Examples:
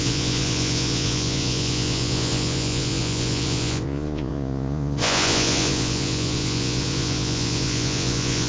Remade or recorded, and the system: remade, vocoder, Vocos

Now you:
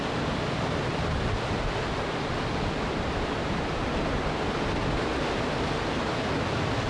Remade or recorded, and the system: recorded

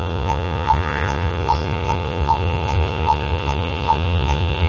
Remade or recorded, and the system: remade, vocoder, Vocos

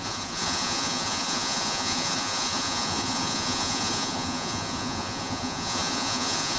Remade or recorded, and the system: remade, vocoder, Vocos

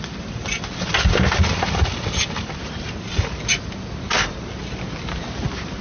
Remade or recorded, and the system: recorded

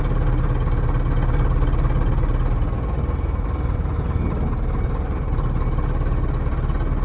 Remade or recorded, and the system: recorded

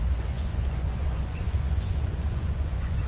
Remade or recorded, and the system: remade, vocoder, Vocos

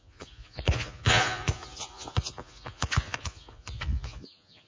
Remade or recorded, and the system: remade, vocoder, Vocos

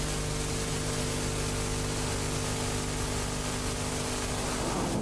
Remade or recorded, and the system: recorded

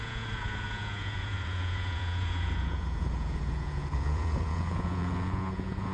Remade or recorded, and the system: remade, vocoder, Vocos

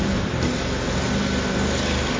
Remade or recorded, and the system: recorded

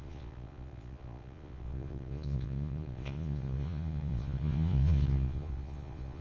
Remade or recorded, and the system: remade, vocoder, Vocos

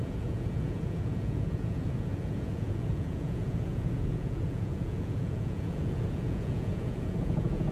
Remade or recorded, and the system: remade, vocoder, Vocos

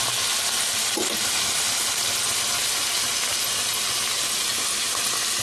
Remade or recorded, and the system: recorded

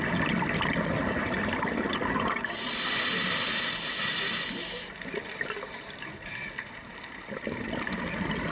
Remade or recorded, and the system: recorded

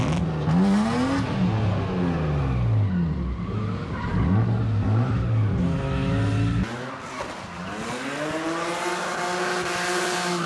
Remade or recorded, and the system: recorded